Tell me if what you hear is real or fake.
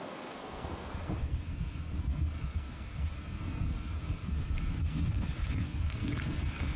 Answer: fake